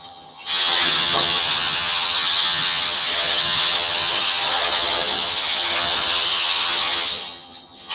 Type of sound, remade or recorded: remade